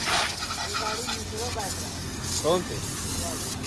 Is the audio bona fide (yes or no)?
yes